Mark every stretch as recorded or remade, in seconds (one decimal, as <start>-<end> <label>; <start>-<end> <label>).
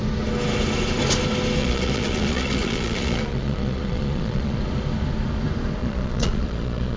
0.0-1.6 recorded; 1.6-4.6 remade; 4.6-5.8 recorded; 5.8-7.0 remade